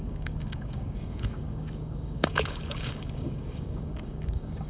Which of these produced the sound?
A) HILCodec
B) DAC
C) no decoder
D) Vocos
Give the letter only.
B